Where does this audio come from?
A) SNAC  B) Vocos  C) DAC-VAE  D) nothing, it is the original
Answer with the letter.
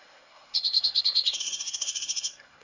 A